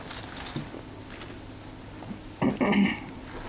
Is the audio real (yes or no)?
yes